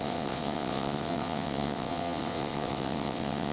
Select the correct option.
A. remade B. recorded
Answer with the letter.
A